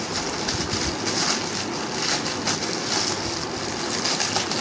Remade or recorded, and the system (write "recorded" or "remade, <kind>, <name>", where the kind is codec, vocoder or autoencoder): recorded